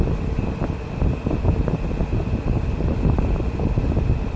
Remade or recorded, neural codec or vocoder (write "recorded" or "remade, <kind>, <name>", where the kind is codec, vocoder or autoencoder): remade, vocoder, BigVGAN v2